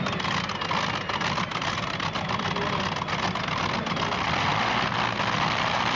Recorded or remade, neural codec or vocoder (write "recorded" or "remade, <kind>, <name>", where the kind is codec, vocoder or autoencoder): recorded